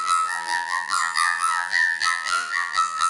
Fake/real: fake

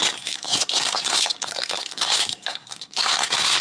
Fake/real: fake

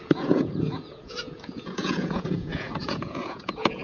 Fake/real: fake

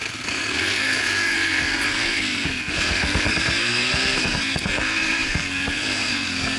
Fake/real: fake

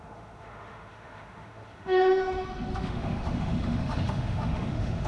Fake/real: fake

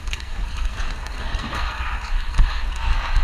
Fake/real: fake